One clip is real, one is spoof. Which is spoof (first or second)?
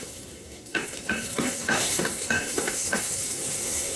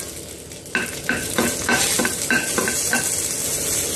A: first